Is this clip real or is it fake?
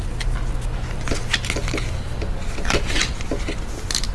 real